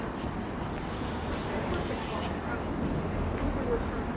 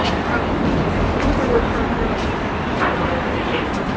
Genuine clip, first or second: first